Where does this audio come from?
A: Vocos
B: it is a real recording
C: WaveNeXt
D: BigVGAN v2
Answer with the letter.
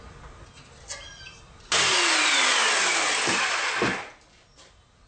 B